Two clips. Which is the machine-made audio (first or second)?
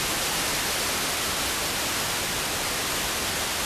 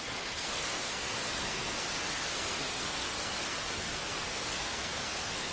second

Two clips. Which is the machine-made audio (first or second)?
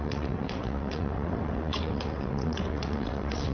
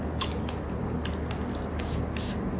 first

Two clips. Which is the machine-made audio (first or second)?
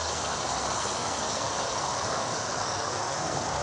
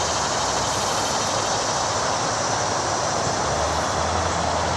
first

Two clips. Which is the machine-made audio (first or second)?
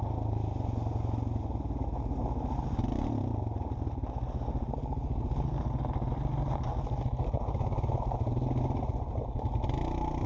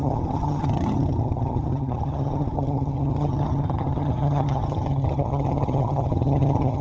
second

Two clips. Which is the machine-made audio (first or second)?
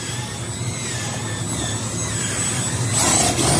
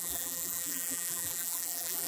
second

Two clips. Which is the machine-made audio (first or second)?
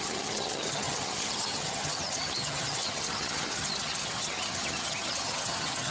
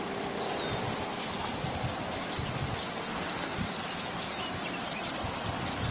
first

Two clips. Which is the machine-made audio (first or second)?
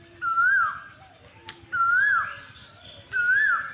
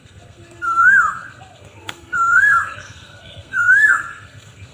second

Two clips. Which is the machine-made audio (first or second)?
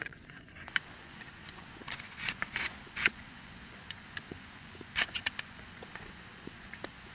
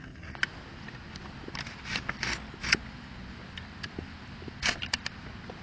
first